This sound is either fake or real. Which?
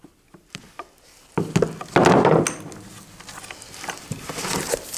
real